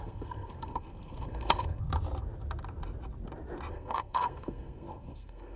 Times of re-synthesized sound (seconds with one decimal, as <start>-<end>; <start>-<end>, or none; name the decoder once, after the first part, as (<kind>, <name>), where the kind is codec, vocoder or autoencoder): 0.0-1.8 (codec, SNAC); 3.7-5.6